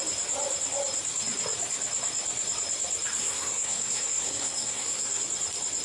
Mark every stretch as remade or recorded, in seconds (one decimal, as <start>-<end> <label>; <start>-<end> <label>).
0.0-3.2 recorded; 3.2-5.2 remade; 5.2-5.8 recorded